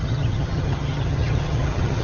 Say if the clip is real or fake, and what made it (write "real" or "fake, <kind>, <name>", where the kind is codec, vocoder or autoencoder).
fake, vocoder, HiFi-GAN